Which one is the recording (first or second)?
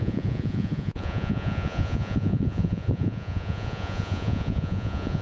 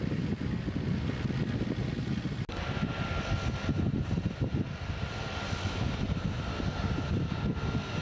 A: second